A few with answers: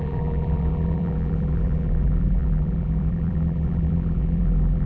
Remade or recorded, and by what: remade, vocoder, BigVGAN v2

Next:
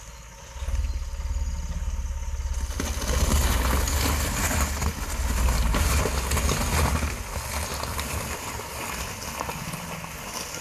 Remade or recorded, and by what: recorded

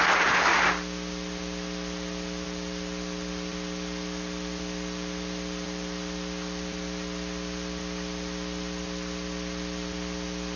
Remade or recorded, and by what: remade, vocoder, BigVGAN v2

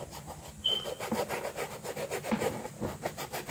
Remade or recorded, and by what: recorded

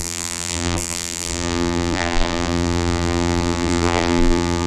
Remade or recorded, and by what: remade, vocoder, BigVGAN v2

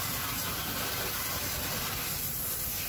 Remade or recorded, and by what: recorded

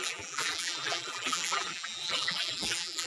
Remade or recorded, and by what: remade, vocoder, BigVGAN v2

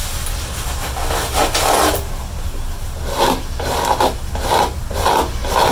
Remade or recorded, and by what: recorded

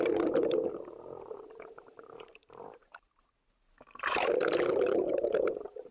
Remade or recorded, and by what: remade, vocoder, BigVGAN v2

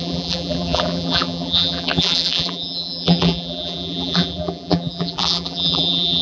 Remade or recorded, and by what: remade, vocoder, BigVGAN v2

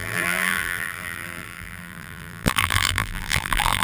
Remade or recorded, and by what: remade, vocoder, BigVGAN v2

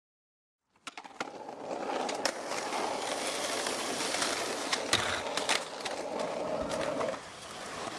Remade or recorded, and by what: recorded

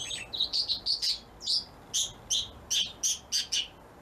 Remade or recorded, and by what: recorded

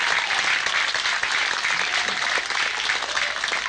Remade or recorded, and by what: recorded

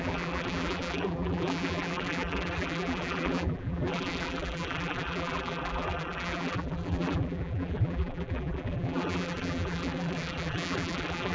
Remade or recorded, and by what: remade, vocoder, BigVGAN v2